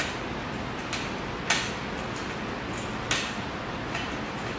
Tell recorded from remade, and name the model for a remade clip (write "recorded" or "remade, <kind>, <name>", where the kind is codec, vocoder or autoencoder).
recorded